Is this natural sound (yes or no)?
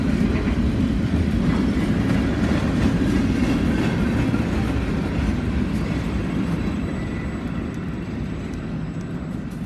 yes